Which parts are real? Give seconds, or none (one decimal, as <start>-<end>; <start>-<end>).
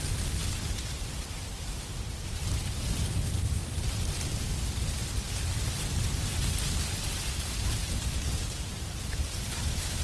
0.0-10.0